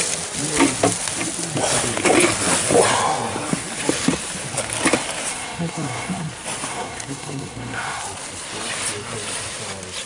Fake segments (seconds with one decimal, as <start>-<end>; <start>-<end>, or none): 5.3-6.3; 6.7-8.0